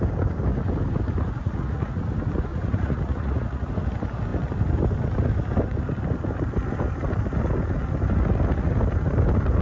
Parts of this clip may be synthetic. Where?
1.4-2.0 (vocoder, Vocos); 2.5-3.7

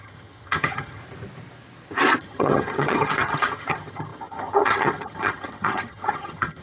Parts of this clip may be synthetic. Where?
0.0-1.0 (vocoder, HiFi-GAN); 2.2-6.6

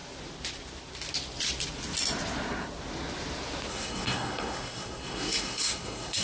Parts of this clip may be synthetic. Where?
3.7-6.2 (codec, SNAC)

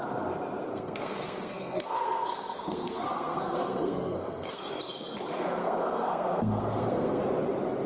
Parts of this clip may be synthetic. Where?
0.7-4.7 (codec, SNAC); 5.6-7.2